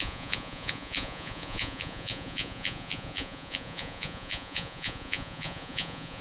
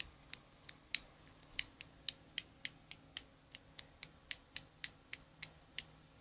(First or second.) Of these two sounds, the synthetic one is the first